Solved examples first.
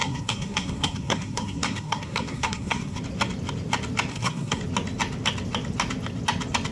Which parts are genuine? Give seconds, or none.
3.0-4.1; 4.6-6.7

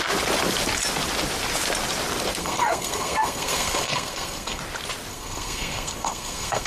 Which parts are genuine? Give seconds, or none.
0.0-2.4; 4.6-5.1

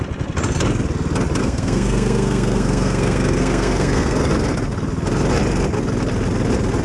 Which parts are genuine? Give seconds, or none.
0.0-1.4; 4.3-6.8